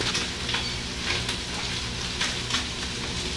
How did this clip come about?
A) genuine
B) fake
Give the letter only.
A